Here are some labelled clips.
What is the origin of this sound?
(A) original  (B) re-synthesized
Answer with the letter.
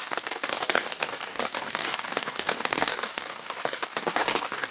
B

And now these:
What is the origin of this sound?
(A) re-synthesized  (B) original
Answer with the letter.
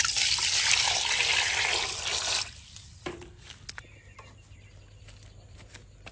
B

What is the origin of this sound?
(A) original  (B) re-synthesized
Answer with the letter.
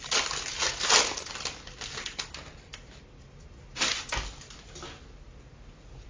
A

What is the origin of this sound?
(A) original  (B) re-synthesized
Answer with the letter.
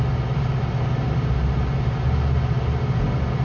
A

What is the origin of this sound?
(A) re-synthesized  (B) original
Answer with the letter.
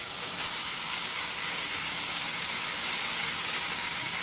A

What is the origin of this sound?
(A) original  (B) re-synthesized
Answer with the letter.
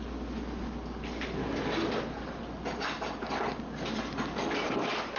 A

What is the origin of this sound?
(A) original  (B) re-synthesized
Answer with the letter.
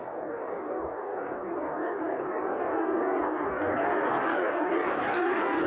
B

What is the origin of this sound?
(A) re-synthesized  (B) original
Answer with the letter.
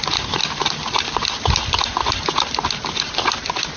B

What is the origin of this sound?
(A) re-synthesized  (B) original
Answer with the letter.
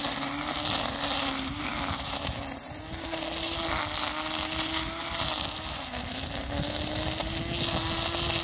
B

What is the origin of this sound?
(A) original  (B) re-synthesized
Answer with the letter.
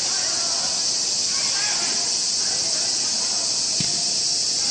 A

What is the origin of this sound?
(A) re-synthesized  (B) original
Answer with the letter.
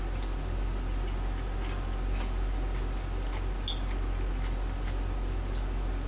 B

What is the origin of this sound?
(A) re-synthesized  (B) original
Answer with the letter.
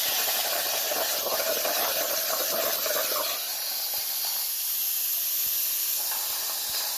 B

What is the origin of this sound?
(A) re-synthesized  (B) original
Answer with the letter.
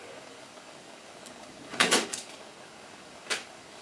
A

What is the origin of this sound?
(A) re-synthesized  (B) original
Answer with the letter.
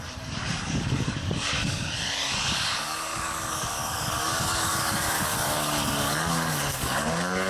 A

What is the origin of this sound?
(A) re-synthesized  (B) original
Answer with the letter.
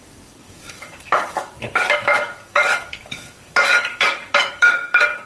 A